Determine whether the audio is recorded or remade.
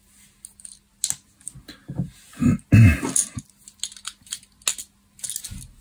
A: recorded